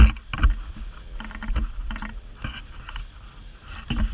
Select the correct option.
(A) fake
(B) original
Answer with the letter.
B